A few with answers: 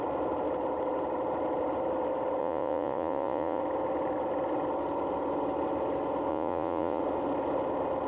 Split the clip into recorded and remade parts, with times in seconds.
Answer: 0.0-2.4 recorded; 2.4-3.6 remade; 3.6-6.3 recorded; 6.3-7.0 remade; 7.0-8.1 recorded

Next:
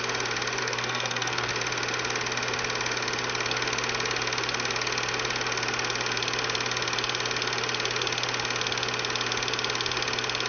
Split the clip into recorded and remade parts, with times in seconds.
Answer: 0.0-0.6 recorded; 0.6-1.5 remade; 1.5-10.5 recorded

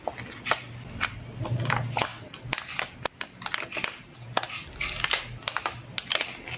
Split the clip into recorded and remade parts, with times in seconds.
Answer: 0.0-6.6 recorded

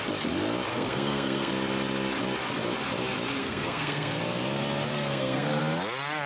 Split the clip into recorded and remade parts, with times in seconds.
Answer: 0.0-0.7 recorded; 0.7-1.5 remade; 1.5-3.4 recorded; 3.4-4.2 remade; 4.2-4.9 recorded; 4.9-5.6 remade; 5.6-6.3 recorded

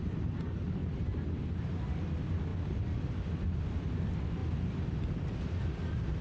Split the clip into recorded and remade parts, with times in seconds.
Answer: 0.0-4.4 recorded; 4.4-6.2 remade

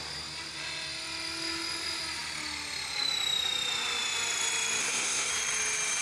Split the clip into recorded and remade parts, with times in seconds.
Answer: 0.0-4.8 recorded; 4.8-5.3 remade; 5.3-6.0 recorded